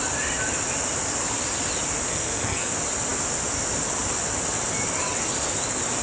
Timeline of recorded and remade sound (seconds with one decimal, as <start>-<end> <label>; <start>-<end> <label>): 0.0-2.1 recorded; 2.1-2.7 remade; 2.7-6.0 recorded